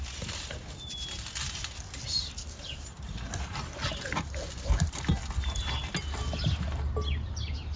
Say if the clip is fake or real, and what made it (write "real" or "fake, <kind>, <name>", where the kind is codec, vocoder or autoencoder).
real